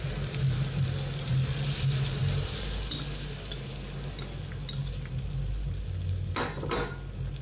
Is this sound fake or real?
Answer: real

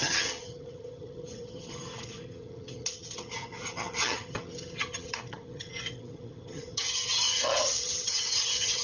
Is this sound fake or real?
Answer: fake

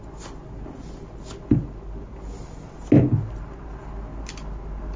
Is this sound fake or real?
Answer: real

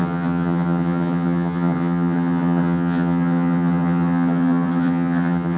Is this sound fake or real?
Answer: fake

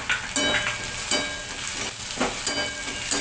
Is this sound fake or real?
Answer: real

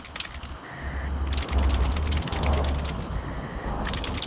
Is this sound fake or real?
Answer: real